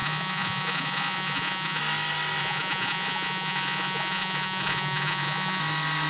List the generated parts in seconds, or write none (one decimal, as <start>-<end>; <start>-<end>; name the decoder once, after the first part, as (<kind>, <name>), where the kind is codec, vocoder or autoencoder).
0.0-1.8 (vocoder, Vocos); 2.4-5.6